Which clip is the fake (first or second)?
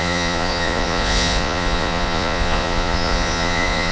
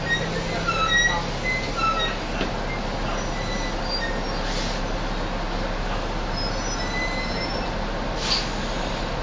first